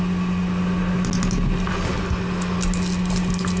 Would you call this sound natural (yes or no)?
yes